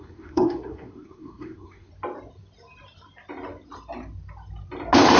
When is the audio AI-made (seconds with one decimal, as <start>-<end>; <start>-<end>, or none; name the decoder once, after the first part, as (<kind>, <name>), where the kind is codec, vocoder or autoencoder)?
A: 0.0-1.9 (codec, SNAC)